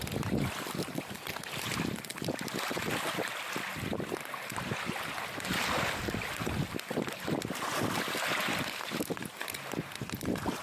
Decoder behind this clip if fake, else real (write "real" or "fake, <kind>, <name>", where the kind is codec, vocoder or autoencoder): real